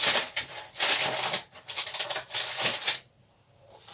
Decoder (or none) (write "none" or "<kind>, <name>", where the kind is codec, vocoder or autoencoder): none